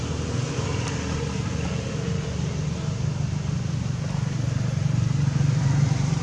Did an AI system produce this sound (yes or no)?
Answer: no